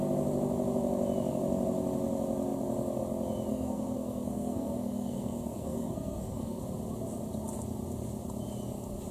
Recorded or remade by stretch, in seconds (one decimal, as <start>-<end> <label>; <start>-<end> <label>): 0.0-3.5 recorded; 3.5-6.6 remade; 6.6-9.1 recorded